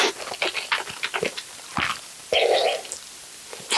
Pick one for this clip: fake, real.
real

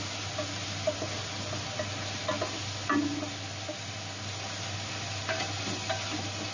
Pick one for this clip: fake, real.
real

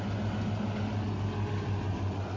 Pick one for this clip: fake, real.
real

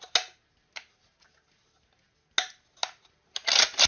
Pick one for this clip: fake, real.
real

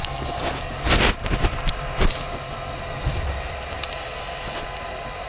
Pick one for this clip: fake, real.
real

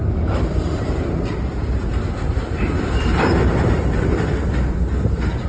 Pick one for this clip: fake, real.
fake